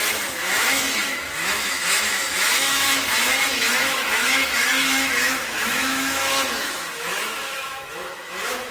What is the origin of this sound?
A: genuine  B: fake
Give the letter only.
B